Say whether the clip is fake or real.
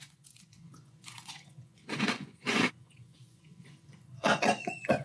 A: fake